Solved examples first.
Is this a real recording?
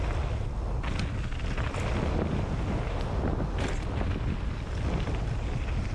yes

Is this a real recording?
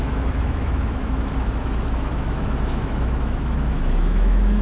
no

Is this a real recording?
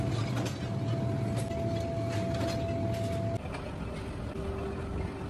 yes